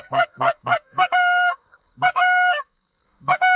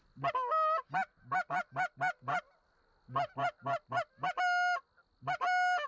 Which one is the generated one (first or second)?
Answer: first